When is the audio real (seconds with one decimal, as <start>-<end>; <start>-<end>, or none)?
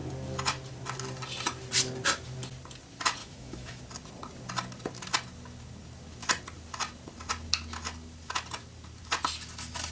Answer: 0.0-3.2; 3.8-9.9